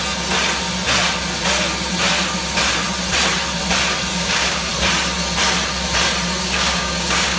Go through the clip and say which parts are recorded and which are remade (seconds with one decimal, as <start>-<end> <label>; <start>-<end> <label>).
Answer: 0.0-4.1 recorded; 4.1-4.7 remade; 4.7-6.4 recorded; 6.4-7.4 remade